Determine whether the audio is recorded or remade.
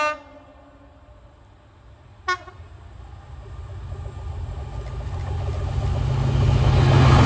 recorded